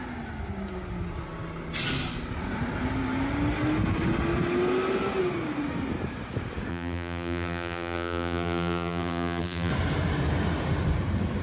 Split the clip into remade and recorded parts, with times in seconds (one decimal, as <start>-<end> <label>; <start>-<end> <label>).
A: 0.0-6.7 recorded; 6.7-9.7 remade; 9.7-11.4 recorded